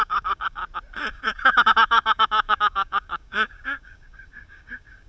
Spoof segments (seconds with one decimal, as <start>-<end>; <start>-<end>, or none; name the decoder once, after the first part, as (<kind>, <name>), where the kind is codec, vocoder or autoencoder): 0.0-0.6 (codec, DAC); 1.1-5.1